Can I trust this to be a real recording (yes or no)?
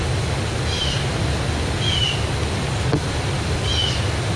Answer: yes